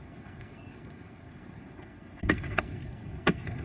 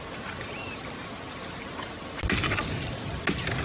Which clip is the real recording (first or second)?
second